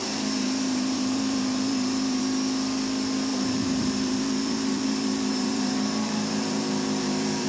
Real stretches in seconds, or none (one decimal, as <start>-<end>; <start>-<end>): 2.2-3.3